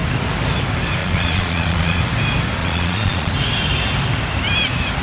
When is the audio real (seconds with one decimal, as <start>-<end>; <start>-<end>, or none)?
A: 0.0-1.0; 2.0-2.6; 3.3-5.0